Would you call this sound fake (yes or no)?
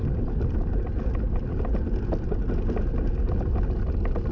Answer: no